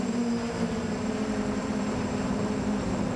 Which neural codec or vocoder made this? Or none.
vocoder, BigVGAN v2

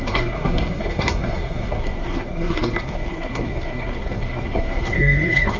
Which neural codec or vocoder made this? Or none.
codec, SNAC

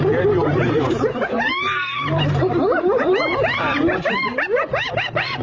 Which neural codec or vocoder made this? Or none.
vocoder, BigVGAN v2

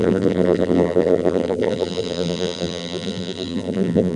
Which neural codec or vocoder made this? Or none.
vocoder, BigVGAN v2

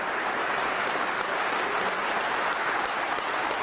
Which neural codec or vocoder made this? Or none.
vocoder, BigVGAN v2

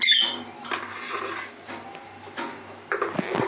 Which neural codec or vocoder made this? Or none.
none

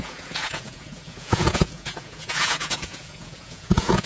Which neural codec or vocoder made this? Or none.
vocoder, Vocos